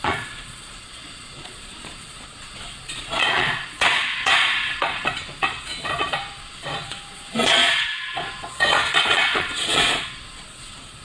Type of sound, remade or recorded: remade